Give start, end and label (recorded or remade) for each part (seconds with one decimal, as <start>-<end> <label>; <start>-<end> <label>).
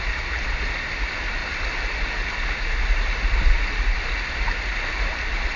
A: 0.0-5.6 recorded